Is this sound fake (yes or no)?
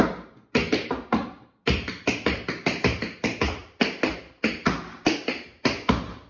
no